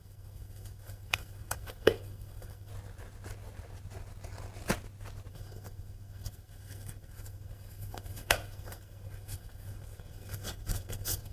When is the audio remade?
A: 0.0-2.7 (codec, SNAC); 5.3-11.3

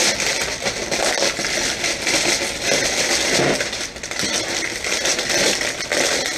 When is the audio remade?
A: none

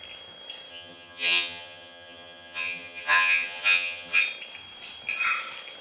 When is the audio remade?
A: 0.7-4.2 (vocoder, HiFi-GAN)

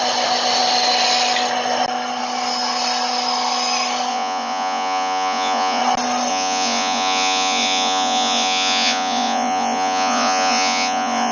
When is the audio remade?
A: 4.1-5.8 (vocoder, Vocos); 6.3-11.3

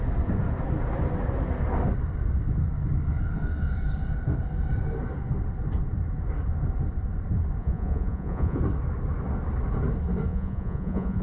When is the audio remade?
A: 7.6-8.6 (vocoder, Vocos); 10.3-11.2

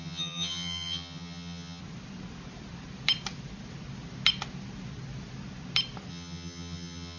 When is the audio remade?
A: 0.0-1.8 (vocoder, HiFi-GAN); 6.1-7.2

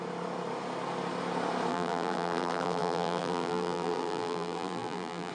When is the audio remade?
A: 1.7-5.3 (vocoder, BigVGAN v2)

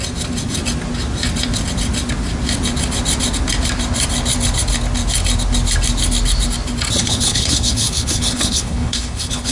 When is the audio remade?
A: 7.0-9.5 (codec, HILCodec)